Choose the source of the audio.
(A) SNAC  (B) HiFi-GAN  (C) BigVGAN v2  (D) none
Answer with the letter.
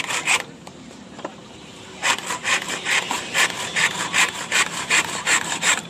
C